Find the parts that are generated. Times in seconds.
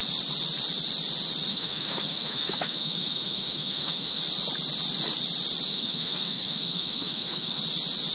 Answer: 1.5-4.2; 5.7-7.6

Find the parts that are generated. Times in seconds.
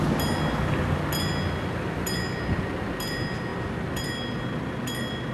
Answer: none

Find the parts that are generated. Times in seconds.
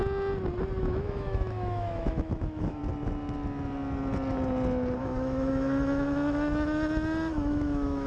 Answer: 0.8-2.8; 5.0-8.1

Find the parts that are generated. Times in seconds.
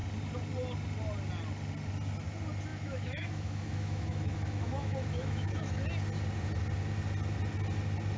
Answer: 2.7-5.7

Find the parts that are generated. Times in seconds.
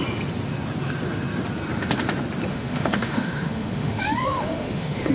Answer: 2.5-5.1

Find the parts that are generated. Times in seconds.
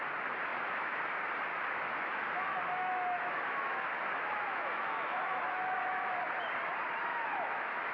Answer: 0.5-1.0; 1.5-6.2; 7.1-7.9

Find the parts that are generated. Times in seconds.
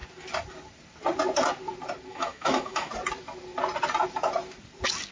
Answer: 2.1-2.9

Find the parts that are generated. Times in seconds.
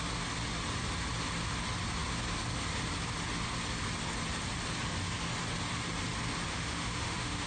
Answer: 6.5-7.5